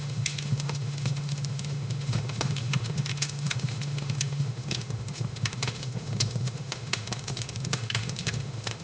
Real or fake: fake